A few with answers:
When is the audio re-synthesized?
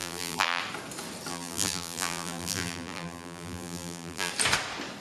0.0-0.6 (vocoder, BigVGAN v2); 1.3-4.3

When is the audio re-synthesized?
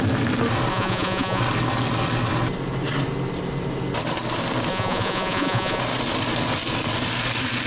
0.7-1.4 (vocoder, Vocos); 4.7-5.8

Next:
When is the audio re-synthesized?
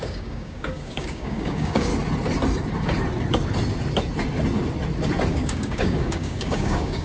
0.0-1.9 (codec, DAC); 5.3-7.0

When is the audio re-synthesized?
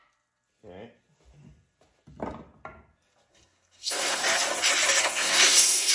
3.3-4.2 (codec, SNAC); 5.0-5.9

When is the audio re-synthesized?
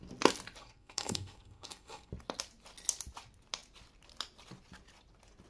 0.6-2.1 (codec, SNAC)